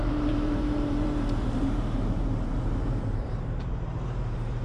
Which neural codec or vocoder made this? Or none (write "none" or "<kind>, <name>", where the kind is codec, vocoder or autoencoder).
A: vocoder, BigVGAN v2